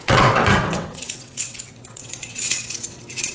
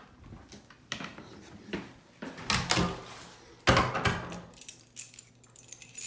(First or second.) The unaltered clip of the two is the second